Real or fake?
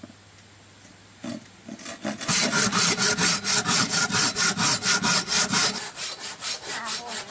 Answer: real